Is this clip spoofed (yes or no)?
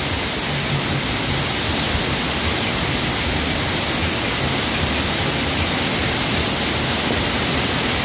no